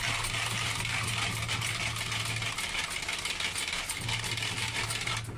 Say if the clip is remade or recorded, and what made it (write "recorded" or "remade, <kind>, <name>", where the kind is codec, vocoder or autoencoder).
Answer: recorded